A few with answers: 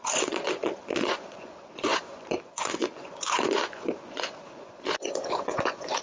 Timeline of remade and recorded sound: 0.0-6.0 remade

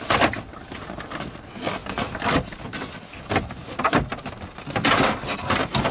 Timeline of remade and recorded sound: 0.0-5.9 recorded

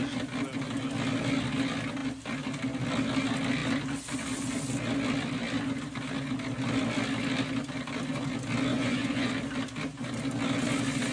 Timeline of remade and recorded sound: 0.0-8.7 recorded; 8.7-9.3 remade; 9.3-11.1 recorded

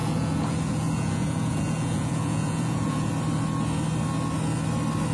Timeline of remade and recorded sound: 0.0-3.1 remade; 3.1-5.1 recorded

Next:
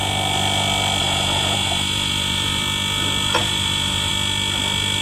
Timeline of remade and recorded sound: 0.0-1.0 recorded; 1.0-2.6 remade; 2.6-3.4 recorded; 3.4-4.1 remade; 4.1-5.0 recorded

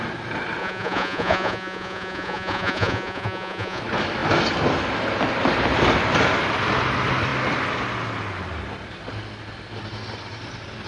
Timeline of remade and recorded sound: 0.0-0.6 recorded; 0.6-3.8 remade; 3.8-10.9 recorded